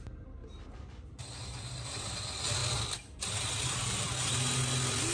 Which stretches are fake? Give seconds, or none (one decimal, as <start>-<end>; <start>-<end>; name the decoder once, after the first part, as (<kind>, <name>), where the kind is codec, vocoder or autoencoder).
0.4-1.2 (vocoder, BigVGAN v2)